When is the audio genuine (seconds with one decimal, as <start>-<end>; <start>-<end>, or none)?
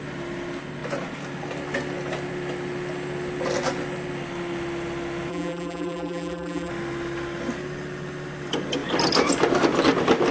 0.0-5.3; 6.7-10.3